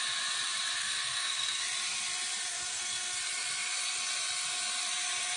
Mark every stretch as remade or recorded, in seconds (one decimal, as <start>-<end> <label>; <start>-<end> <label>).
0.0-0.8 recorded; 0.8-1.6 remade; 1.6-2.5 recorded; 2.5-3.2 remade; 3.2-5.4 recorded